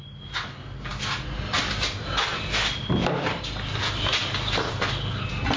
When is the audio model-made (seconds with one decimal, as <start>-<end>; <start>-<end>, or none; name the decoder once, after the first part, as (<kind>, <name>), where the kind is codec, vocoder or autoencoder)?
none